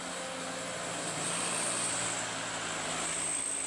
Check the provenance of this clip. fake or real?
real